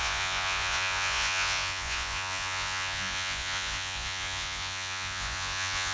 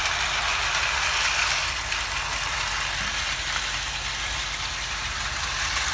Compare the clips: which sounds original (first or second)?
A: second